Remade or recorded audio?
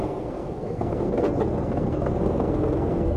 remade